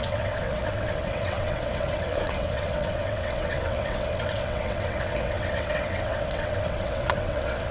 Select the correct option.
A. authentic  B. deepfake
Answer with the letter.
B